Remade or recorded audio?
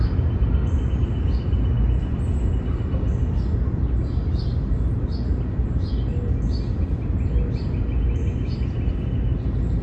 recorded